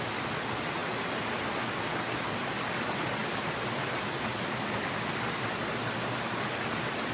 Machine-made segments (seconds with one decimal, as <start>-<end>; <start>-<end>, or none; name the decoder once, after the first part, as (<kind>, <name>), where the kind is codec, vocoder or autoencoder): none